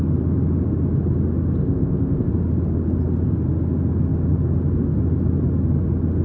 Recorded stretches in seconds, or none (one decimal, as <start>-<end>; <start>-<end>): 0.0-1.6; 2.3-6.2